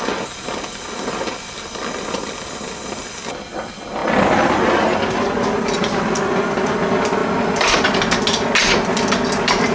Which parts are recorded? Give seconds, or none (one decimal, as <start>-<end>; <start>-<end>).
0.0-9.7